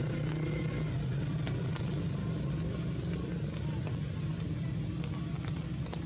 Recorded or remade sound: recorded